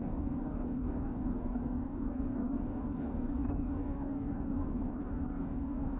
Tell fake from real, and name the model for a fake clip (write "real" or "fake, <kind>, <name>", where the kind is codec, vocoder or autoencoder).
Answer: fake, codec, DAC